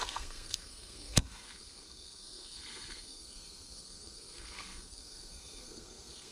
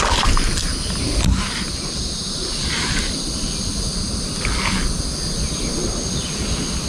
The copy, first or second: first